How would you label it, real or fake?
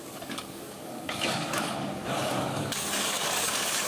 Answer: fake